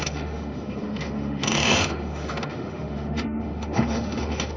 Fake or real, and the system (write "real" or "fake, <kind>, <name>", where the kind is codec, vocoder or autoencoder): fake, autoencoder, DAC-VAE